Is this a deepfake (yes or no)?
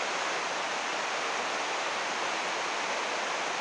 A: no